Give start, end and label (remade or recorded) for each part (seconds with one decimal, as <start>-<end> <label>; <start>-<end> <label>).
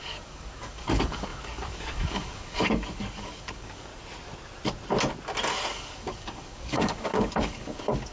0.0-3.9 remade; 3.9-5.7 recorded; 5.7-8.1 remade